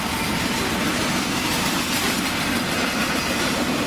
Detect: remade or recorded recorded